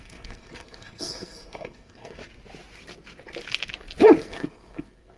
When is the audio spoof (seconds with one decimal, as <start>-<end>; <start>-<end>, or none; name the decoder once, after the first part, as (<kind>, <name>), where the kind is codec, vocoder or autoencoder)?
0.0-2.2 (codec, SNAC); 4.2-5.2